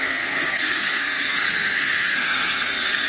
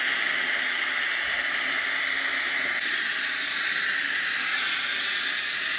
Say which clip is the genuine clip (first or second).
second